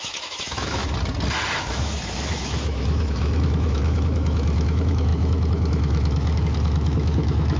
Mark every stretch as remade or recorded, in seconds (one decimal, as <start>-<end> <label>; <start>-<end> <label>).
0.0-0.8 remade; 0.8-1.6 recorded; 1.6-7.6 remade